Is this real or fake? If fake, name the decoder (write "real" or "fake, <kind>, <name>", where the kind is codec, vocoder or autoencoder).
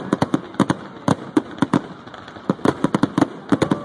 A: real